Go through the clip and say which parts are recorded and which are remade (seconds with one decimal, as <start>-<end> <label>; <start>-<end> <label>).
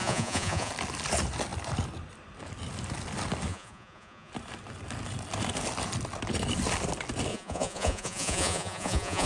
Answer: 0.0-0.7 remade; 0.7-3.5 recorded; 3.5-4.3 remade; 4.3-7.3 recorded; 7.3-9.3 remade